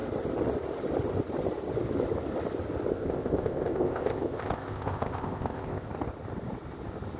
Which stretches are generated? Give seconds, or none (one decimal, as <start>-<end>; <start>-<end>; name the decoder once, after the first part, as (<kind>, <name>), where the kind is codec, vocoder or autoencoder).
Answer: 2.9-5.9 (codec, ZipCodec)